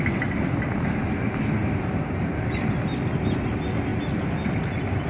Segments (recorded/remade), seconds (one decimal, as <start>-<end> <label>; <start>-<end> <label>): 0.0-5.1 recorded